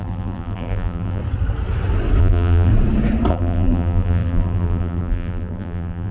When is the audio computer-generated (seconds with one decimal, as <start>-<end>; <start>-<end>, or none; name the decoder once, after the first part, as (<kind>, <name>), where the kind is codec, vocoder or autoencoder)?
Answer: 0.0-1.2 (vocoder, BigVGAN v2); 2.2-2.7; 3.3-6.1